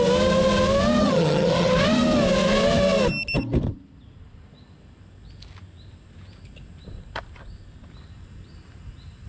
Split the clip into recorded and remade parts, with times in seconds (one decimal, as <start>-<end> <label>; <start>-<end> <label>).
0.0-1.0 recorded; 1.0-1.7 remade; 1.7-9.3 recorded